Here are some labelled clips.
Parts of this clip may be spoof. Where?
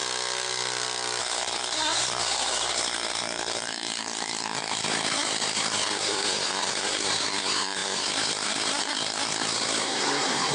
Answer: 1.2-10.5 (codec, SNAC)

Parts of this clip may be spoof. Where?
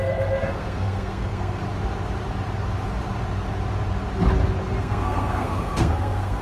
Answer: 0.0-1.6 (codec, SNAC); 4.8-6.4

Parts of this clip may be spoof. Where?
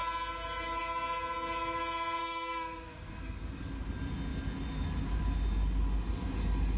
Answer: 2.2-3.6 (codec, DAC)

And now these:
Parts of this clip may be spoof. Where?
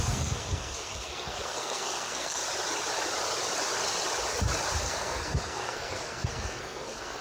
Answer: 0.0-2.4 (codec, SNAC); 4.8-7.2